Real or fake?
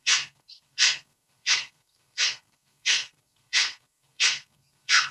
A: fake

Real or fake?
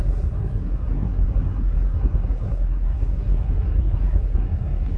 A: fake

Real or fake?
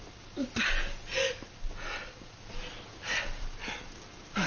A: real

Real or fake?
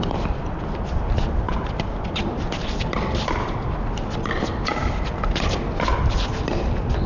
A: real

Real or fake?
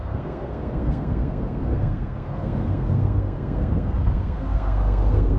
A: fake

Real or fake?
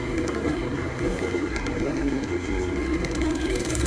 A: fake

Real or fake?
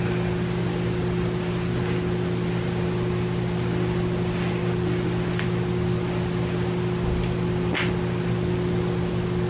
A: real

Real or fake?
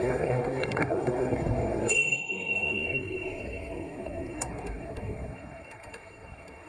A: fake